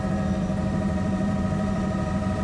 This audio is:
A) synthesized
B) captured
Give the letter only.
A